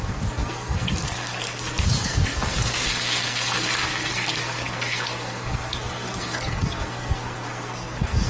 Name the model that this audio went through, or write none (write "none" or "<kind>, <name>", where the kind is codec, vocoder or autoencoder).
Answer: codec, SNAC